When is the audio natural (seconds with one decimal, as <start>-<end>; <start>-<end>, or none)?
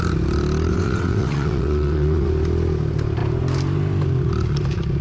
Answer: 0.0-0.7; 2.3-5.0